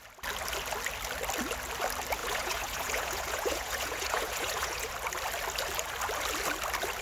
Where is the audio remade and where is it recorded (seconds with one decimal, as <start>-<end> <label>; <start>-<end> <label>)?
0.0-2.2 recorded; 2.2-4.9 remade; 4.9-7.0 recorded

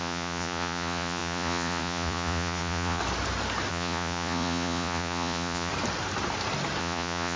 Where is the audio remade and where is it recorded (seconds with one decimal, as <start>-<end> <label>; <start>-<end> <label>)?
0.0-3.0 remade; 3.0-3.7 recorded; 3.7-5.7 remade; 5.7-6.8 recorded; 6.8-7.4 remade

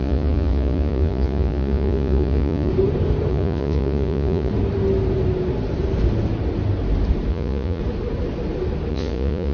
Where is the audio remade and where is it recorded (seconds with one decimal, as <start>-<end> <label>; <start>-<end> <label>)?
0.0-2.7 remade; 2.7-3.3 recorded; 3.3-4.5 remade; 4.5-7.3 recorded; 7.3-7.8 remade; 7.8-8.9 recorded; 8.9-9.5 remade

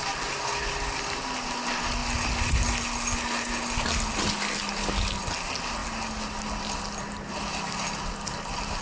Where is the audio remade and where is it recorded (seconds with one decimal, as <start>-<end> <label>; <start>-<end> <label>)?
0.0-8.8 recorded

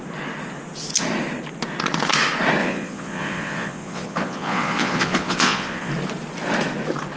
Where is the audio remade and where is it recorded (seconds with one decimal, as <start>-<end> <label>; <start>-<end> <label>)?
0.0-2.6 recorded; 2.6-5.9 remade; 5.9-7.2 recorded

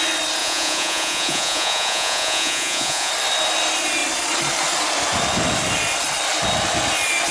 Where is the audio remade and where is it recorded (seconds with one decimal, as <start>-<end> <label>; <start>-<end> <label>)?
0.0-0.4 recorded; 0.4-3.1 remade; 3.1-7.3 recorded